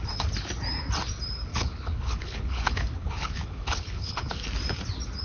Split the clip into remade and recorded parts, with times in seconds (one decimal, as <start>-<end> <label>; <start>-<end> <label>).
0.0-1.5 recorded; 1.5-4.3 remade; 4.3-5.2 recorded